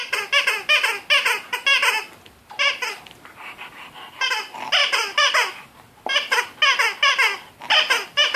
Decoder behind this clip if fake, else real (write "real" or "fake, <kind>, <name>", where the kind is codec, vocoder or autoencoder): real